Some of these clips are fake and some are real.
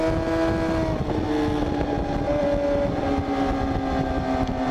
real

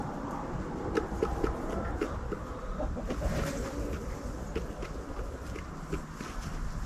real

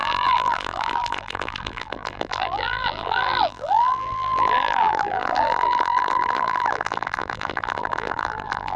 fake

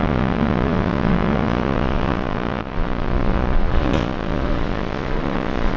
fake